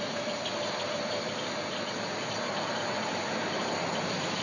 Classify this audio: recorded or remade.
recorded